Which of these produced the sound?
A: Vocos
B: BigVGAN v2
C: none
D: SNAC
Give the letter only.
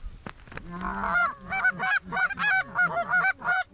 C